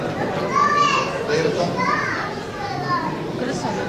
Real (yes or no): yes